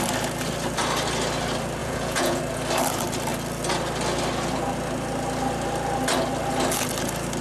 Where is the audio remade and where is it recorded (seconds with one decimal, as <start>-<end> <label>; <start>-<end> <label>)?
0.0-1.8 recorded; 1.8-2.4 remade; 2.4-7.4 recorded

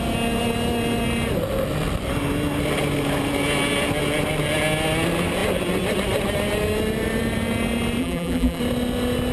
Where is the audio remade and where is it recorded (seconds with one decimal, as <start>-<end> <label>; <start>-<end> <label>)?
0.0-8.0 recorded; 8.0-8.6 remade; 8.6-9.3 recorded

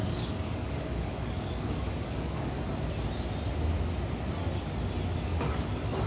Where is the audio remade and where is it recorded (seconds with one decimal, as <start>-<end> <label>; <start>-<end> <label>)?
0.0-2.5 remade; 2.5-5.3 recorded; 5.3-6.1 remade

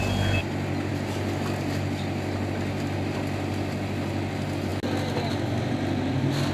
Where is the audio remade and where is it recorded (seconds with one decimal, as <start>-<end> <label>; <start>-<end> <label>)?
0.0-6.5 recorded

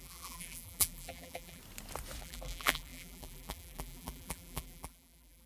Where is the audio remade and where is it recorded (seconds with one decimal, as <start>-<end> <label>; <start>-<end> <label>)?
0.0-1.6 remade; 1.6-2.2 recorded; 2.2-5.5 remade

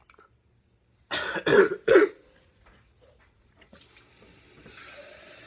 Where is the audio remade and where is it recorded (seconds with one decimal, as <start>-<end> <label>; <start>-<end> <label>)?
0.0-1.5 recorded; 1.5-3.8 remade; 3.8-5.5 recorded